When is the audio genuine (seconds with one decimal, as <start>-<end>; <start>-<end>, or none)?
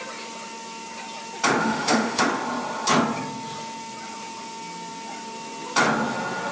0.0-1.6; 2.2-6.5